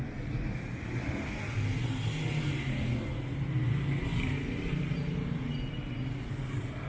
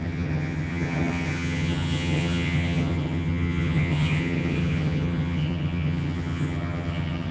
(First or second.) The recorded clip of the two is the first